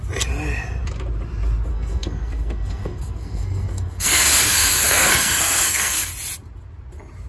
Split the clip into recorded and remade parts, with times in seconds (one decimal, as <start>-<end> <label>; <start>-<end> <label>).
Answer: 0.0-1.7 recorded; 1.7-6.1 remade; 6.1-7.3 recorded